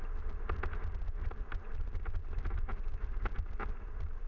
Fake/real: real